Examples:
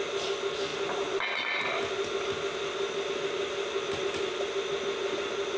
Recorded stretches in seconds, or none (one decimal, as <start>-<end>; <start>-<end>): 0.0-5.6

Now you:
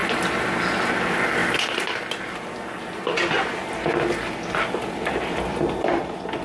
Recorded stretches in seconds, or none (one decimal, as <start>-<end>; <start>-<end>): 0.0-0.9; 1.4-4.1

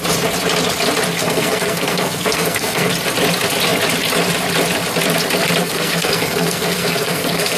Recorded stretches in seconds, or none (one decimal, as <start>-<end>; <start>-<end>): 0.0-1.2; 2.9-5.6